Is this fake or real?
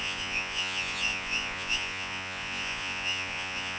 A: fake